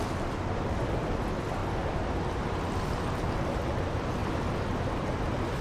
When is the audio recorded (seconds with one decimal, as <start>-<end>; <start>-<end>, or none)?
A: 0.0-5.6

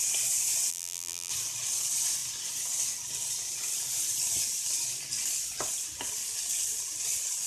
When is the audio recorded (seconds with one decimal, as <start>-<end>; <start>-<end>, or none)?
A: 0.0-0.7; 1.3-7.5

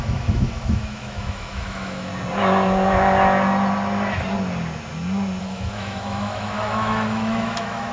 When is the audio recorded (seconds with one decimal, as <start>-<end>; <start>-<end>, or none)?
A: 2.1-5.4

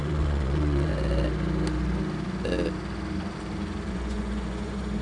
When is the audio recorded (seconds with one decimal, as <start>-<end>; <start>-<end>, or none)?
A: 0.9-3.9

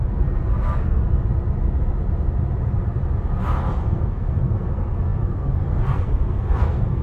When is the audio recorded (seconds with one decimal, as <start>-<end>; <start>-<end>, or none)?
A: 1.0-3.4

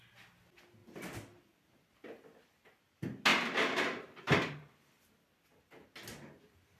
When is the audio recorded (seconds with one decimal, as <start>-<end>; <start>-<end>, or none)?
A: 0.0-6.8

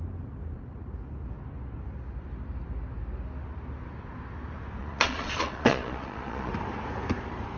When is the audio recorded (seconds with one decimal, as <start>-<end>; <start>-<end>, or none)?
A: 0.0-4.8; 6.5-7.6

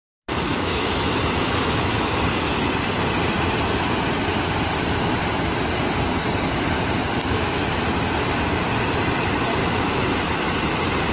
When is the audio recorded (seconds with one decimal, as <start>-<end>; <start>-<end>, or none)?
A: 0.0-0.5; 2.2-9.6; 10.5-11.1